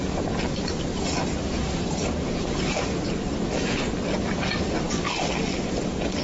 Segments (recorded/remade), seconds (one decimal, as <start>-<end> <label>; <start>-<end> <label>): 0.0-0.9 recorded; 0.9-2.9 remade; 2.9-6.2 recorded